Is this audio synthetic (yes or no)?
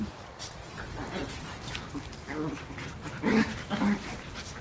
yes